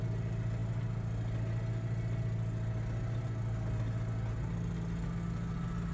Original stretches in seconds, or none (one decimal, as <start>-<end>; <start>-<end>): 0.0-5.9